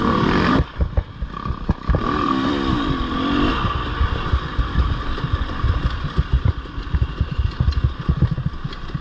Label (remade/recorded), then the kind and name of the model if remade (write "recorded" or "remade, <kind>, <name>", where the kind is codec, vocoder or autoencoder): remade, vocoder, BigVGAN v2